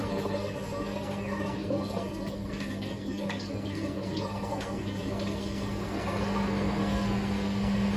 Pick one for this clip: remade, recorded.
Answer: remade